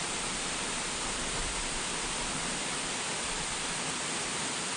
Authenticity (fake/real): fake